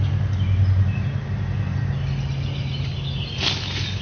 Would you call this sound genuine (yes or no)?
yes